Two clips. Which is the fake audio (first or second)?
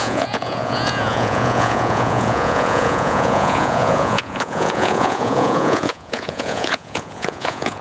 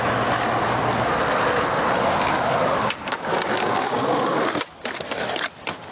first